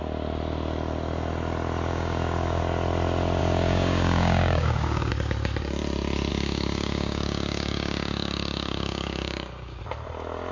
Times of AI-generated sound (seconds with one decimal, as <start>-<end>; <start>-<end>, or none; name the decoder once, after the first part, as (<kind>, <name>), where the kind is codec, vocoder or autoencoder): 1.9-2.6 (codec, DAC); 3.4-5.1; 6.3-9.8